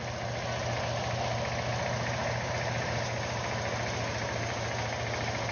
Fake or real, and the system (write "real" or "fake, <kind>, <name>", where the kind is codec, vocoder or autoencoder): real